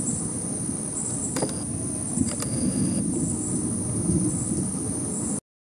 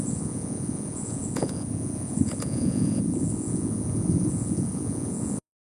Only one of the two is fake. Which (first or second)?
second